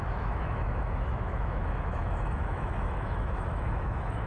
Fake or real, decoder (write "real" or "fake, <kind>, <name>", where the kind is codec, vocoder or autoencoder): fake, autoencoder, DAC-VAE